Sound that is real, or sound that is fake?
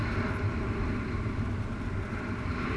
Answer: real